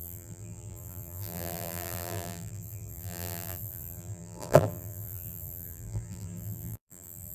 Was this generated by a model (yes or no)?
yes